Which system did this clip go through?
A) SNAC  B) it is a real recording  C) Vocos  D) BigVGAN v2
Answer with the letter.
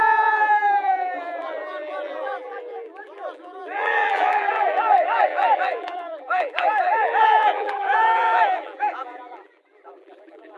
D